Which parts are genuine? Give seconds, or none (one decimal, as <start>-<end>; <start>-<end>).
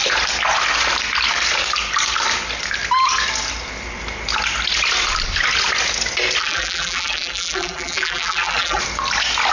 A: 0.0-6.4; 8.8-9.5